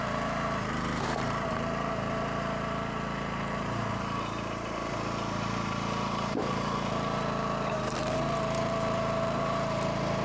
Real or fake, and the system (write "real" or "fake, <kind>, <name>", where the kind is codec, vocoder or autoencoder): fake, vocoder, BigVGAN v2